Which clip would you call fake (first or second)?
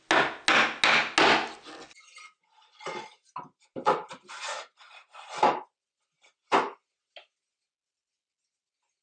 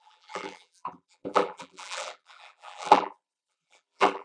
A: second